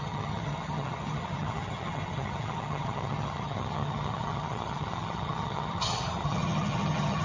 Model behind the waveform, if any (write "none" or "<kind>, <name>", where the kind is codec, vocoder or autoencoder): vocoder, HiFi-GAN